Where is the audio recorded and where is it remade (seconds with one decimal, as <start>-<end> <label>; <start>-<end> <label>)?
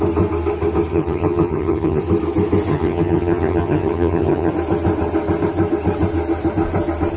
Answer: 0.0-0.9 recorded; 0.9-2.0 remade; 2.0-2.7 recorded; 2.7-4.5 remade; 4.5-7.2 recorded